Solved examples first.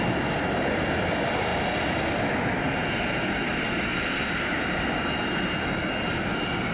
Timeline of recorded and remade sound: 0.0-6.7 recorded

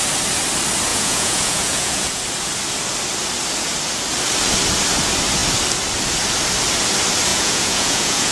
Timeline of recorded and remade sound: 0.0-0.9 recorded; 0.9-2.2 remade; 2.2-7.3 recorded; 7.3-8.3 remade

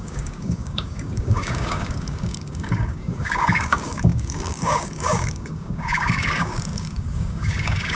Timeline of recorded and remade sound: 0.0-8.0 remade

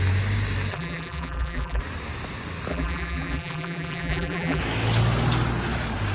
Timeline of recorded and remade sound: 0.0-0.7 recorded; 0.7-1.8 remade; 1.8-2.7 recorded; 2.7-4.6 remade; 4.6-6.1 recorded